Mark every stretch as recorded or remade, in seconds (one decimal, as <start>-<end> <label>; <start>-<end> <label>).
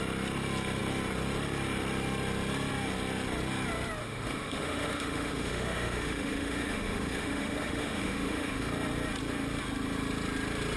0.0-4.0 recorded; 4.0-8.7 remade; 8.7-10.8 recorded